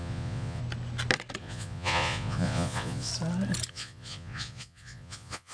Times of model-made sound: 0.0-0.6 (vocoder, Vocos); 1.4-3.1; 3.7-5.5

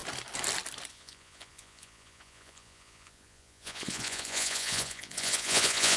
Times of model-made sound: 0.9-6.0 (vocoder, Vocos)